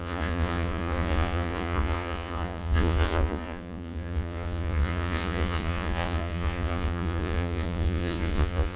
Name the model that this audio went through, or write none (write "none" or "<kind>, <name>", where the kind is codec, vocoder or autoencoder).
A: vocoder, Vocos